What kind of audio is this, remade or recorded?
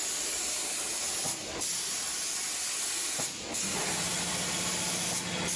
recorded